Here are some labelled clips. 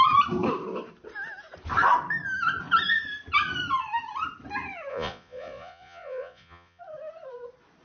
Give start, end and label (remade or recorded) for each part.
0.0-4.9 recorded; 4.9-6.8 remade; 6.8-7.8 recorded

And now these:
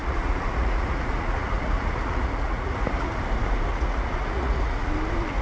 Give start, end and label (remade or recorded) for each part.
0.0-3.2 remade; 3.2-3.7 recorded; 3.7-4.9 remade; 4.9-5.4 recorded

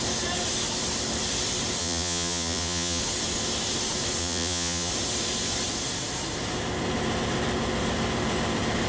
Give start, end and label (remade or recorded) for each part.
0.0-1.8 recorded; 1.8-3.0 remade; 3.0-4.2 recorded; 4.2-4.9 remade; 4.9-8.9 recorded

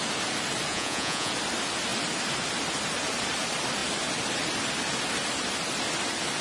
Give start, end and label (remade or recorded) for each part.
0.0-0.7 recorded; 0.7-1.3 remade; 1.3-6.4 recorded

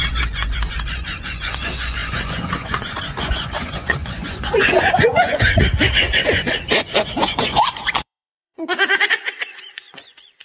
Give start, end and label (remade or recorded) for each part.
0.0-10.4 remade